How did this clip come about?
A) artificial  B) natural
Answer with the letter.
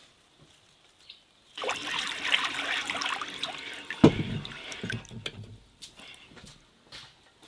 B